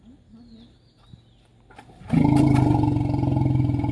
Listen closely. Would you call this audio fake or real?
real